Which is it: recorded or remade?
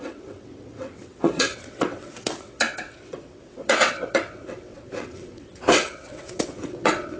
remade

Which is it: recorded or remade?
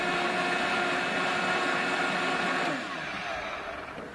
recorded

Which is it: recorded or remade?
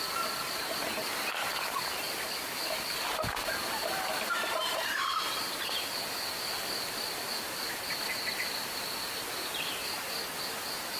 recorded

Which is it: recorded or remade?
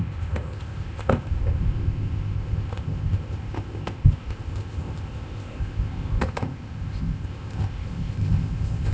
remade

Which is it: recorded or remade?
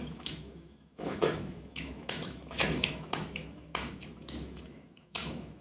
remade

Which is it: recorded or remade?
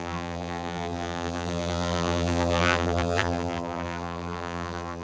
remade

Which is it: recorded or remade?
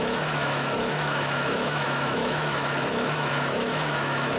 remade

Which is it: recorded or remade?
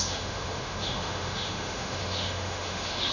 remade